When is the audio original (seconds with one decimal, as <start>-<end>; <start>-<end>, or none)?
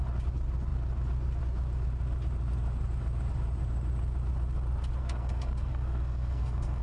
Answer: 0.0-5.0